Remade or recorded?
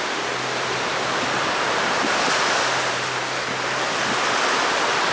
recorded